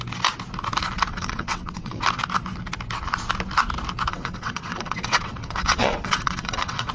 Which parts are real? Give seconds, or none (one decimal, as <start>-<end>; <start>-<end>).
0.0-1.1; 2.0-4.1